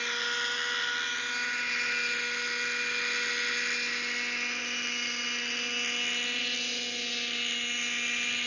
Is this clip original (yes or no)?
yes